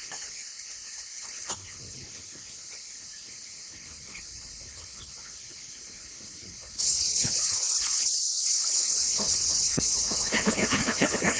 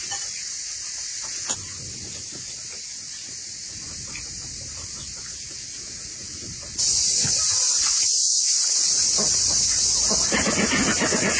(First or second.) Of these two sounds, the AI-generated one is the first